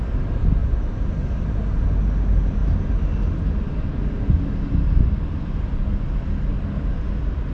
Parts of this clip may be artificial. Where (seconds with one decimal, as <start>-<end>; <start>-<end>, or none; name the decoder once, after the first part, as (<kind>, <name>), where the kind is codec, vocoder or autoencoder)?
0.6-1.9 (vocoder, BigVGAN v2)